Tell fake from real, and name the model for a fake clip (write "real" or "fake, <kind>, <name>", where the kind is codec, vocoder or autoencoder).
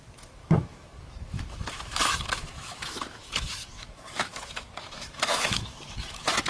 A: fake, autoencoder, DAC-VAE